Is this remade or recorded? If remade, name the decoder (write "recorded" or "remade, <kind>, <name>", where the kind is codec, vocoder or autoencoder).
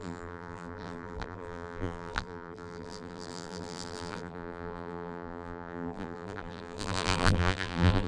remade, vocoder, BigVGAN v2